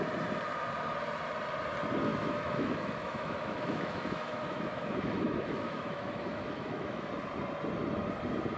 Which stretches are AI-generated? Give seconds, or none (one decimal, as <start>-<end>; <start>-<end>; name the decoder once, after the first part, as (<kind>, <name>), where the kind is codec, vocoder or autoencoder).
2.1-7.1 (autoencoder, DAC-VAE)